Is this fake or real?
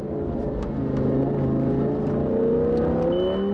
real